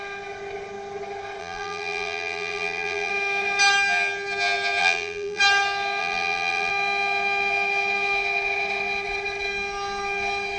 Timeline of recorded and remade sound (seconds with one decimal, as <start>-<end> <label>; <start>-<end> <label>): 0.0-1.4 recorded; 1.4-3.1 remade; 3.1-4.8 recorded; 4.8-5.4 remade; 5.4-6.0 recorded; 6.0-6.7 remade; 6.7-10.6 recorded

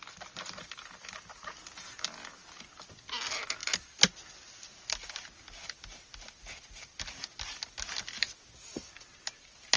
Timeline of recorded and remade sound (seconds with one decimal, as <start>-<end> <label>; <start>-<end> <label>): 0.0-9.8 recorded

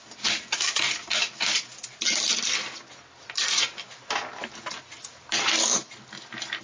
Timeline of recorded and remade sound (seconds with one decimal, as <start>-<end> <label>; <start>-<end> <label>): 0.0-6.6 recorded

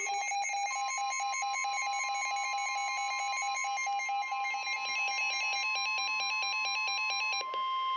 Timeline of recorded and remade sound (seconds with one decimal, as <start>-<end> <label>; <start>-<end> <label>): 0.0-8.0 recorded

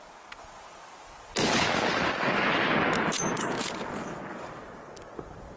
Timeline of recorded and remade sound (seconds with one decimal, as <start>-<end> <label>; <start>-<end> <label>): 0.0-3.4 recorded; 3.4-4.6 remade; 4.6-5.6 recorded